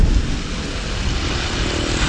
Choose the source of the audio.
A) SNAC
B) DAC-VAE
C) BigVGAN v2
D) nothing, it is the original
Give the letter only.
D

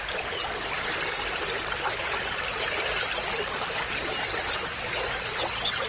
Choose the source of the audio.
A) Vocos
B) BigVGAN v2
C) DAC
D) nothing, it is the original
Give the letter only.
D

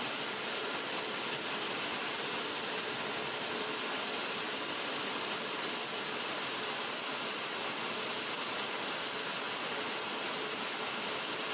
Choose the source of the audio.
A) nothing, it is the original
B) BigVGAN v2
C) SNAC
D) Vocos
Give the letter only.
A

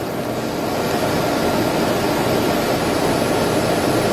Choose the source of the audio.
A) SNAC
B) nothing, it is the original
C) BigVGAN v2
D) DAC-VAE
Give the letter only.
B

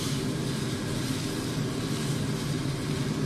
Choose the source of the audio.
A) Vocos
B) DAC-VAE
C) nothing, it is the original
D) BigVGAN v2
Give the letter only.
C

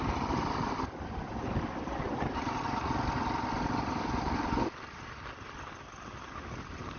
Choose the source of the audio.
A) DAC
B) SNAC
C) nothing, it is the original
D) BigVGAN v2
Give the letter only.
C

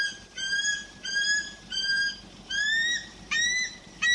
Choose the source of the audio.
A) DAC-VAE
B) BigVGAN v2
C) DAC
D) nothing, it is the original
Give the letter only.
B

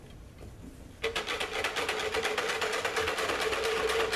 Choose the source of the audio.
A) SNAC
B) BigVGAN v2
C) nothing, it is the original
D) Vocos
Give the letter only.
C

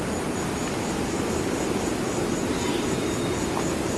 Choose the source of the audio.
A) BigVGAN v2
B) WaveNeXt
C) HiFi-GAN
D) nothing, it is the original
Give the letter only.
D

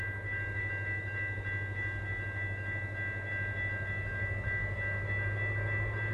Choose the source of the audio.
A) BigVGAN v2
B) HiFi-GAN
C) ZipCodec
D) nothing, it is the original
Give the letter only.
D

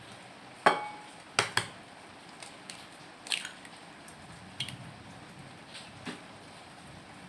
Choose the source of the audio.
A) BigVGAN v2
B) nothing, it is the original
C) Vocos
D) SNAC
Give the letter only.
B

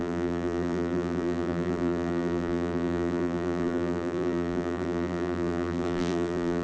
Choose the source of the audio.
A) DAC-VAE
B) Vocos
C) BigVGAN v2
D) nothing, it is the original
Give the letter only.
C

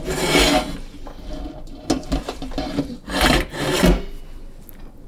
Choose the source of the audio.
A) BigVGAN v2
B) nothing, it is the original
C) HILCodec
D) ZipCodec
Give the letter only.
B